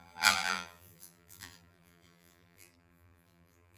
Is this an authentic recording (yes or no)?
no